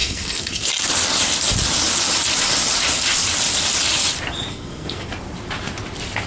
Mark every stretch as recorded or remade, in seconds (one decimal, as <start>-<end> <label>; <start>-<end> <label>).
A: 0.0-0.7 remade; 0.7-4.5 recorded; 4.5-5.1 remade; 5.1-6.3 recorded

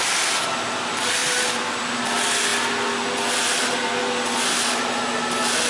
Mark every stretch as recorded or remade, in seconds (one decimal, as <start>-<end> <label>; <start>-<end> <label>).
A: 0.0-1.2 recorded; 1.2-1.9 remade; 1.9-5.7 recorded

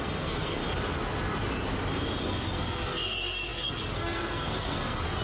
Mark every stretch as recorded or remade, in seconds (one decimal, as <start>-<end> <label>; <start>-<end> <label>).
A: 0.0-0.6 remade; 0.6-2.2 recorded; 2.2-5.2 remade

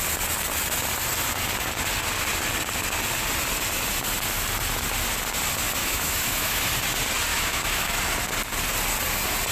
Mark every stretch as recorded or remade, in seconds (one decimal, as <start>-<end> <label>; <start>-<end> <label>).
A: 0.0-5.8 recorded; 5.8-6.6 remade; 6.6-7.3 recorded; 7.3-8.0 remade; 8.0-9.5 recorded

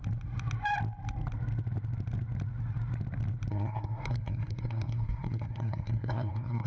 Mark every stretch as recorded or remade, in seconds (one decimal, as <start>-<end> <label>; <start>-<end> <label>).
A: 0.0-3.5 recorded; 3.5-6.7 remade

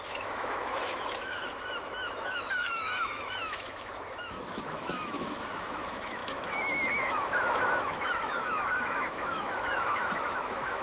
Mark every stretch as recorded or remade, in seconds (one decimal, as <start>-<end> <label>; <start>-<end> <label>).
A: 0.0-10.8 remade